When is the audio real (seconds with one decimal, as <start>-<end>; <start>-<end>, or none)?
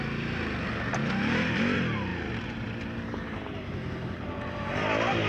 0.0-5.3